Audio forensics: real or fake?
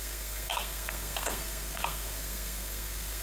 fake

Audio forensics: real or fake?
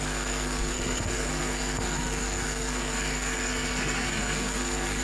fake